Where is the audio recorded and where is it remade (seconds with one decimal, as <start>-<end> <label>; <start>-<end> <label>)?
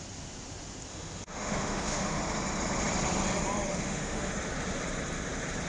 0.0-0.9 recorded; 0.9-2.2 remade; 2.2-3.7 recorded; 3.7-4.3 remade; 4.3-5.7 recorded